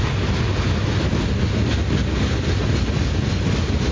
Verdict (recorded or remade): recorded